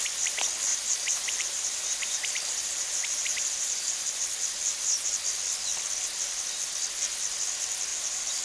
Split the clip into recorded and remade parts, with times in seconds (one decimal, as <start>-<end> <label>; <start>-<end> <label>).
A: 0.0-0.7 recorded; 0.7-4.2 remade; 4.2-7.9 recorded; 7.9-8.4 remade